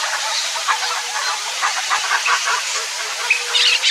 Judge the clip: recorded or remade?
recorded